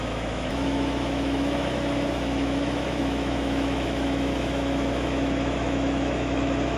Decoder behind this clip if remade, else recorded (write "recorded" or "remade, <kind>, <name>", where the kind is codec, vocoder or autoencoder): remade, autoencoder, DAC-VAE